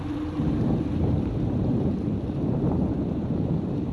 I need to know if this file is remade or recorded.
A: remade